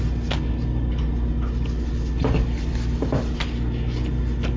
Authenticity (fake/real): real